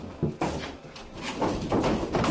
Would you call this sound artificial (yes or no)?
no